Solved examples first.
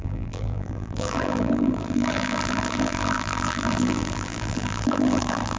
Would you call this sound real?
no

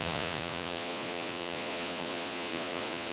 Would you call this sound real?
no